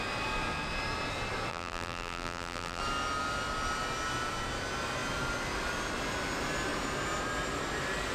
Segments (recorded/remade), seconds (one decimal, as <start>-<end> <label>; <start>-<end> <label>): 0.0-1.5 recorded; 1.5-2.8 remade; 2.8-8.1 recorded